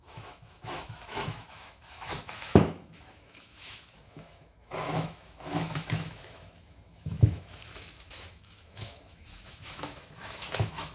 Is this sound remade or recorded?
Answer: remade